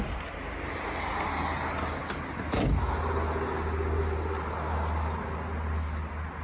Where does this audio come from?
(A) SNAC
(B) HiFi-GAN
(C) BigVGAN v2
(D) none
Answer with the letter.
D